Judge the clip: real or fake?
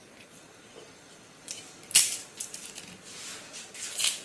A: real